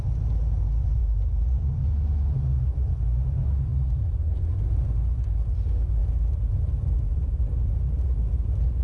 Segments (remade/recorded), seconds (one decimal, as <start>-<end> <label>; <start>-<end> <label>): 0.0-3.7 recorded; 3.7-4.8 remade; 4.8-6.0 recorded; 6.0-8.8 remade